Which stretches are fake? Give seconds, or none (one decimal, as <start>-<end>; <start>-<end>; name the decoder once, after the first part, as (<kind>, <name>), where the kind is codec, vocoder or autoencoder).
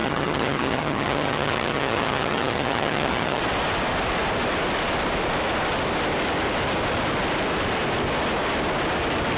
0.0-3.4 (vocoder, HiFi-GAN)